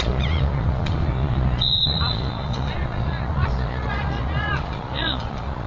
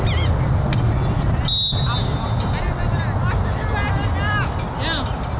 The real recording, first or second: second